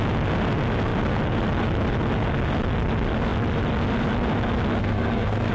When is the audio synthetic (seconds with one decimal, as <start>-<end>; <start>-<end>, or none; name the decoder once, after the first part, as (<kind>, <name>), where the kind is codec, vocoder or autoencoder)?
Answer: 4.8-5.5 (codec, SNAC)